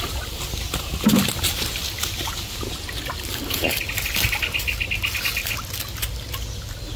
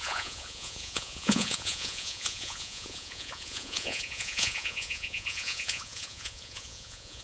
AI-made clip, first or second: second